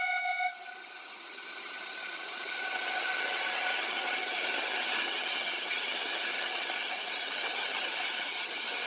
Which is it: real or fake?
fake